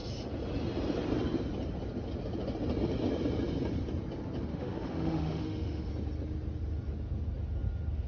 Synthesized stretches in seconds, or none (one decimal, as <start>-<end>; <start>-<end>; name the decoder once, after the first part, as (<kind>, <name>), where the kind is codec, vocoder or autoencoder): 4.5-5.9 (autoencoder, DAC-VAE)